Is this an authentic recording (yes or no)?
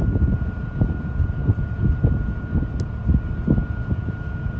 yes